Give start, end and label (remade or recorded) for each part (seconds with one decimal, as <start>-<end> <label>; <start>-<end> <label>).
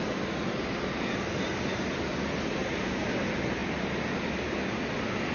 0.0-2.6 recorded; 2.6-3.1 remade; 3.1-5.3 recorded